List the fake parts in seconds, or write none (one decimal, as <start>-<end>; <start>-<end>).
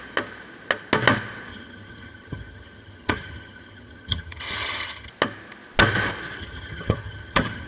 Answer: 1.5-5.1; 6.4-7.7